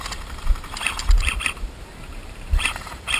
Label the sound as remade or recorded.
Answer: remade